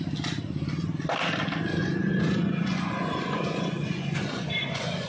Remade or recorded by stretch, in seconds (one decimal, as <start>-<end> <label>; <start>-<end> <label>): 0.0-1.8 recorded; 1.8-5.1 remade